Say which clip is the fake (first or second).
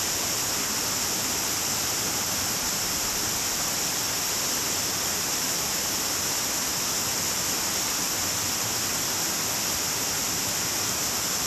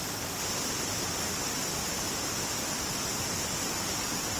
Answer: second